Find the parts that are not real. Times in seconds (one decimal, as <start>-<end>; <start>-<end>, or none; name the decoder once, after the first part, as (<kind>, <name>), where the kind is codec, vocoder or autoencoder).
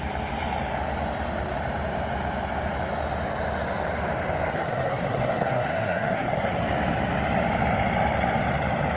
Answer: 4.5-6.6 (codec, SNAC)